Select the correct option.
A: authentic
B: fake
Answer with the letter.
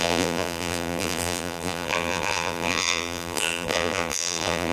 B